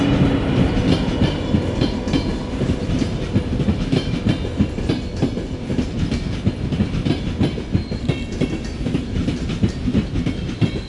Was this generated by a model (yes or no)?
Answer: no